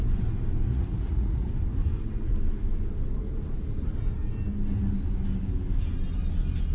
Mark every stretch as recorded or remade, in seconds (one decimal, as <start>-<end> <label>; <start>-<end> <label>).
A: 0.0-0.7 recorded; 0.7-1.5 remade; 1.5-6.7 recorded